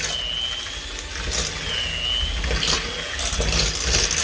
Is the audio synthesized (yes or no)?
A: no